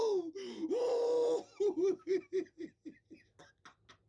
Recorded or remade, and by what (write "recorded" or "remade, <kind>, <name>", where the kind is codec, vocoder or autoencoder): recorded